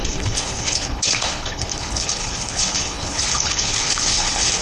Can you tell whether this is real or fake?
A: fake